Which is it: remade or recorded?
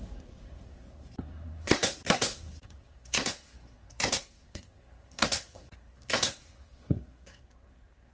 remade